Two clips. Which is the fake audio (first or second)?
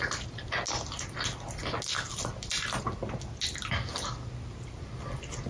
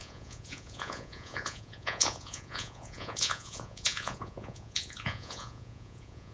second